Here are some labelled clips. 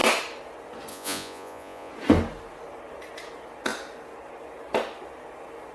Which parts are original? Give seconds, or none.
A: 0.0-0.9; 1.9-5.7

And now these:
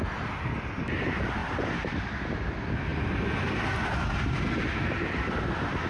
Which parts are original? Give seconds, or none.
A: 0.0-5.9

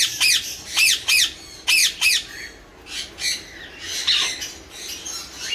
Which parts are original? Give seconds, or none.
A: 0.0-5.5

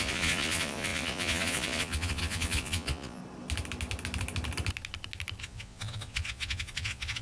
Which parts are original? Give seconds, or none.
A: 3.2-5.4

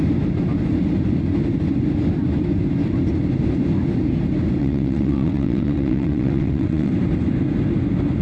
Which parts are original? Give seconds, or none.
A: 0.0-4.6; 6.9-8.2

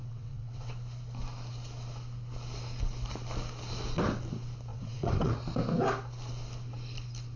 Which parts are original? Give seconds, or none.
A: 0.7-4.7; 5.3-7.4